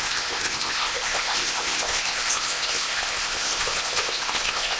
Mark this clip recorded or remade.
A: remade